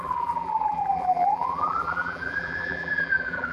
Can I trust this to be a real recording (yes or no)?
no